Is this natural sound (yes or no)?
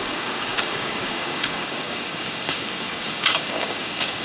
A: no